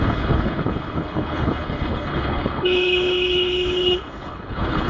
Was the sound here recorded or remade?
remade